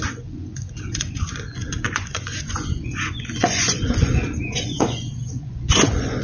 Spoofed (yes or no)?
yes